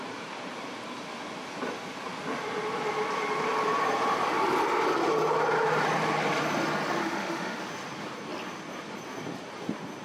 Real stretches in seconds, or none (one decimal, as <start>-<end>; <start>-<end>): 0.0-7.0; 7.6-10.0